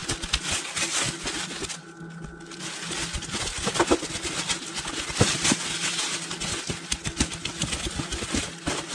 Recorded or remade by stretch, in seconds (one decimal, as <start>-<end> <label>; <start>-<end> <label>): 0.0-8.9 recorded